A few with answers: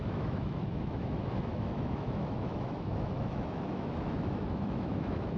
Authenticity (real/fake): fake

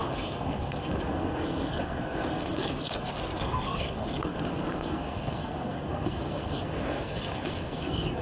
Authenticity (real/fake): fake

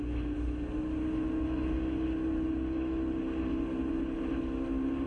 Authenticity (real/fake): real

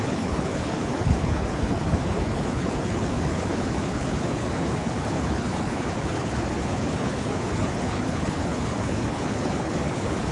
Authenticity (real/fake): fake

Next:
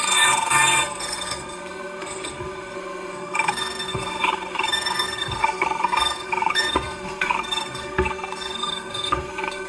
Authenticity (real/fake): fake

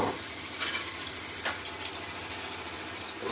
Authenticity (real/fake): real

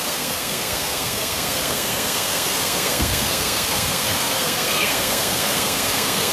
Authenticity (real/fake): fake